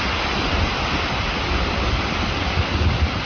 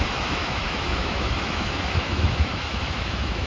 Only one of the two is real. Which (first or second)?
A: first